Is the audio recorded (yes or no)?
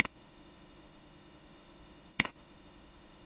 no